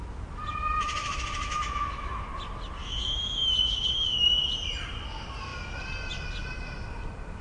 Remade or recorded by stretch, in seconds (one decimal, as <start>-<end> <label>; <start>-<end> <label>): 0.0-1.0 recorded; 1.0-2.2 remade; 2.2-2.8 recorded; 2.8-4.5 remade; 4.5-7.4 recorded